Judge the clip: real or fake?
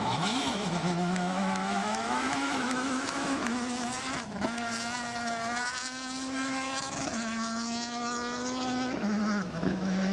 fake